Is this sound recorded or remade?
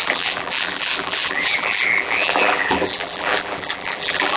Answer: remade